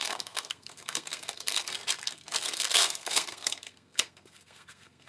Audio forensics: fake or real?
fake